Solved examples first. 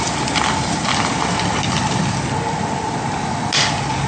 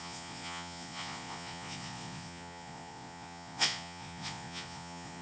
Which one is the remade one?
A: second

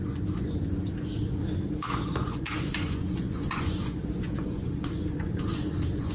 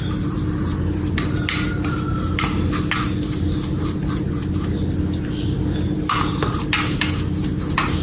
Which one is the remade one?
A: first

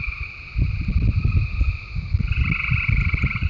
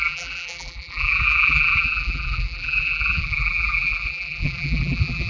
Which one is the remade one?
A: second